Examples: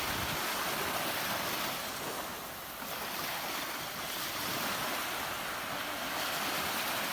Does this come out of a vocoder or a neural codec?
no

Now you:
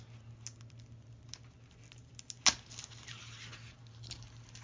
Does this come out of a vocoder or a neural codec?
no